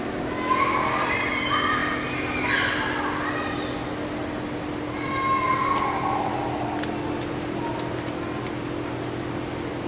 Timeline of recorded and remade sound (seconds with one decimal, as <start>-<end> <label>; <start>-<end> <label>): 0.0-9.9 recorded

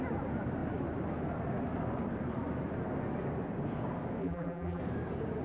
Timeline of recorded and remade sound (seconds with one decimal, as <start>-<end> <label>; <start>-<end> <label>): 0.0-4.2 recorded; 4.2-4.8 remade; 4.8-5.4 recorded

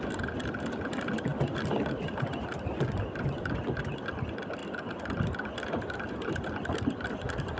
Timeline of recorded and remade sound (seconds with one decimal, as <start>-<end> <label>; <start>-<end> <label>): 0.0-7.6 recorded

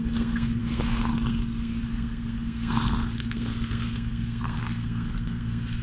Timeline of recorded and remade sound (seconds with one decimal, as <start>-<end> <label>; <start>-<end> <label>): 0.0-5.8 remade

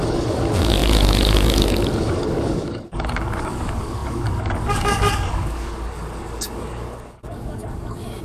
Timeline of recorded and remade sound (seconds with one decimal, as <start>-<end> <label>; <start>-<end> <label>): 0.0-8.2 remade

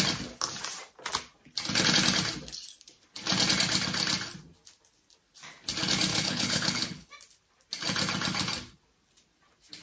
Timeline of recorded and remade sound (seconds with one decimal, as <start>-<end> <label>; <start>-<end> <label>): 0.0-6.1 recorded; 6.1-7.1 remade; 7.1-9.8 recorded

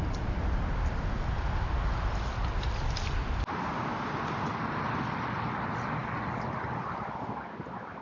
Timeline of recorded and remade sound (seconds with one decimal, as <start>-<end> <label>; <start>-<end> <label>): 0.0-8.0 recorded